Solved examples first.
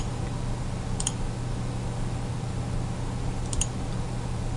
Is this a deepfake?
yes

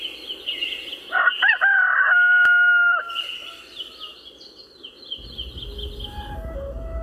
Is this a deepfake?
no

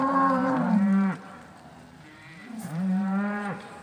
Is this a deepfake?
yes